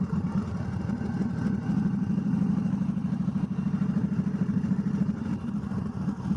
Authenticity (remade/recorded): remade